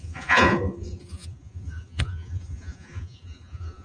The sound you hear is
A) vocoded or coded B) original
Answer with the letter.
A